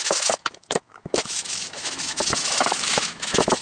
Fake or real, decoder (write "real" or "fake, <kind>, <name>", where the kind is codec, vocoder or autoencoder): fake, autoencoder, DAC-VAE